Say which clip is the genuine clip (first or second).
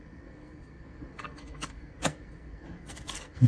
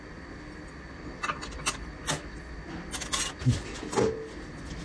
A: second